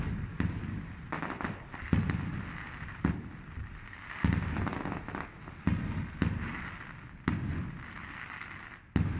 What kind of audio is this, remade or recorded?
recorded